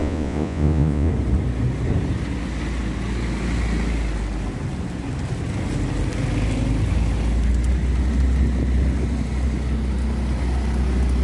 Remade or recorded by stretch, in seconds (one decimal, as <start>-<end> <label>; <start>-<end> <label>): 0.0-1.1 remade; 1.1-11.2 recorded